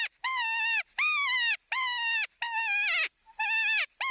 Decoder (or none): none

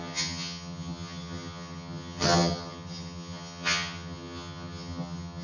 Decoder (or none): vocoder, HiFi-GAN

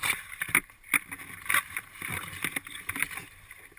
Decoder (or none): vocoder, BigVGAN v2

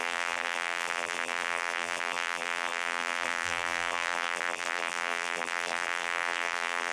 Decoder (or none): vocoder, BigVGAN v2